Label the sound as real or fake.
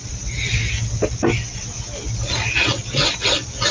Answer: real